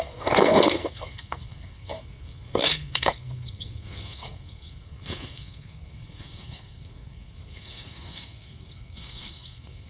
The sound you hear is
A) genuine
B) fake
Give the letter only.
B